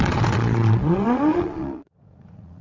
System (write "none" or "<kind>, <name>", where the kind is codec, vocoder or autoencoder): vocoder, Vocos